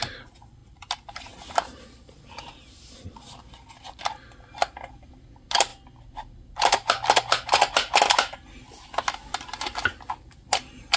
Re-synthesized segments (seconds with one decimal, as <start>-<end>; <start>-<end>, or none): none